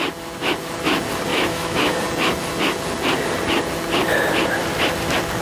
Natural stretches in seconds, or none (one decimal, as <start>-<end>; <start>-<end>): 0.0-1.3; 2.0-5.4